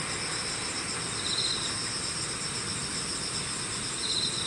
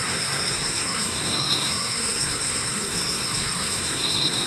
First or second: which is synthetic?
second